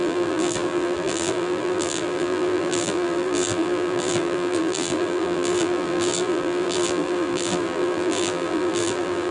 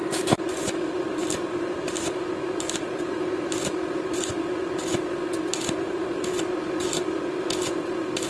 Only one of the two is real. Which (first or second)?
second